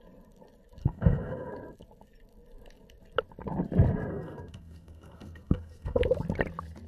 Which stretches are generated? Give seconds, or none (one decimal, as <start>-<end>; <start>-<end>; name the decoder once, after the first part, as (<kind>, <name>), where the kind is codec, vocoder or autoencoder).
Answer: 0.8-1.5 (codec, SNAC); 4.1-6.0